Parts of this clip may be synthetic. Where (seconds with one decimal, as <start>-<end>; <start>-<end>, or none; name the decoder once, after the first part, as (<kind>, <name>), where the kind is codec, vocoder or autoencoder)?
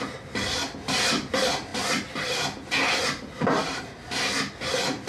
none